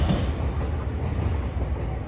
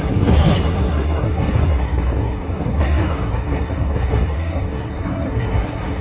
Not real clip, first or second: second